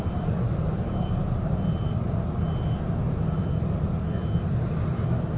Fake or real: real